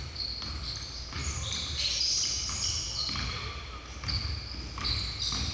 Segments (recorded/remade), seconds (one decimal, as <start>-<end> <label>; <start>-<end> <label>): 0.0-1.2 recorded; 1.2-3.5 remade; 3.5-5.5 recorded